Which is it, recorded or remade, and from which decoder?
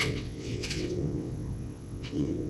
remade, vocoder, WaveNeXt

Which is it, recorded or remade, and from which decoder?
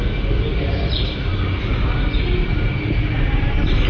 recorded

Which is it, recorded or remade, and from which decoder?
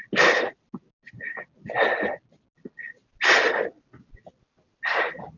recorded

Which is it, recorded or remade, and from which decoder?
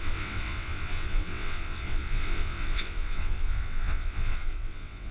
remade, vocoder, WaveNeXt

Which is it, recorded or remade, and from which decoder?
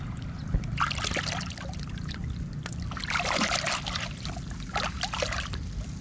recorded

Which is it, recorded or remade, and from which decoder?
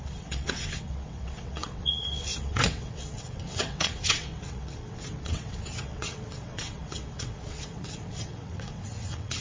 remade, vocoder, WaveNeXt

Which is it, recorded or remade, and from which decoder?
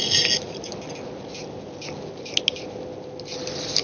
recorded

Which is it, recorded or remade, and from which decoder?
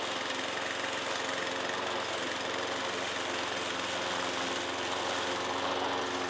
recorded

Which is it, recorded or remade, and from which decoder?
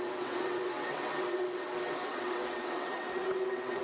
remade, vocoder, WaveNeXt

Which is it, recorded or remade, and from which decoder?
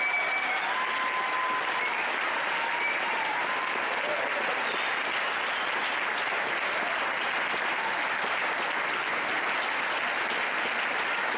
recorded